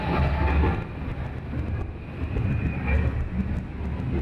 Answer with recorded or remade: recorded